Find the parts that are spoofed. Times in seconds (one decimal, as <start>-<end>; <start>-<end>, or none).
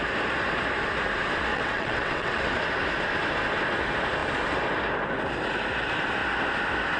1.5-2.4